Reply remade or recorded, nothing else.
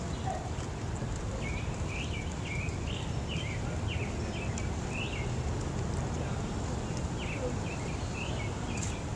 recorded